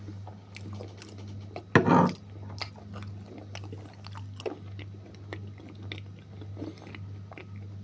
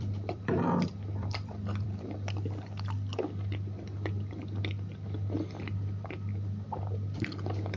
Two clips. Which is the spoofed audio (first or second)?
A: second